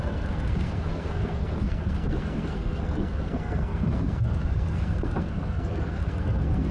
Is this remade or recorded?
remade